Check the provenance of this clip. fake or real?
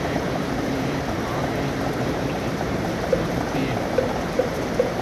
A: fake